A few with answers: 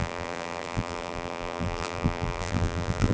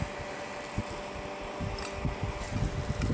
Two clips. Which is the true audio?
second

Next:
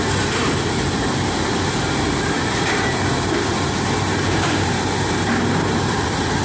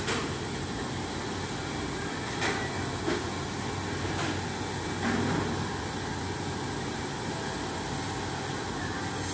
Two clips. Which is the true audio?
second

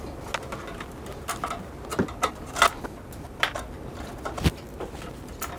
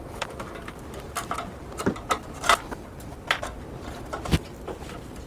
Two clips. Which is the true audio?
first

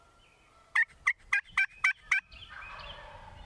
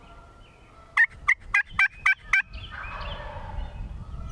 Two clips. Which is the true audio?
second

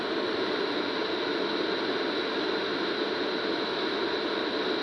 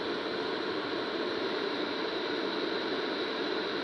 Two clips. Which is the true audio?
first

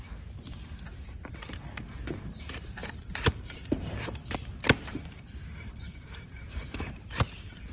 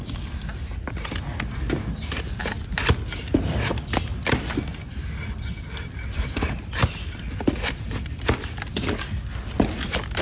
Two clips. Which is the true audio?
second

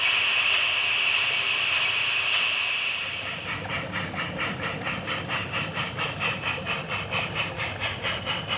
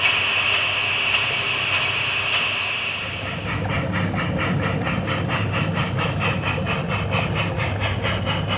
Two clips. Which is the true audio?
second